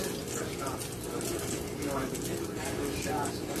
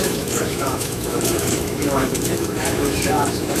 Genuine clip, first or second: first